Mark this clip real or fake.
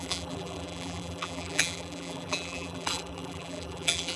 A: fake